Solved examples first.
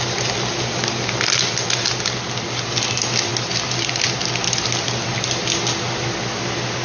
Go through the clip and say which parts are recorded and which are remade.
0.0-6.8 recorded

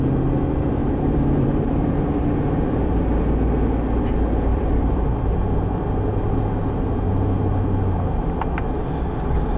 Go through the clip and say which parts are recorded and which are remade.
0.0-0.8 recorded; 0.8-2.3 remade; 2.3-4.5 recorded; 4.5-5.4 remade; 5.4-9.6 recorded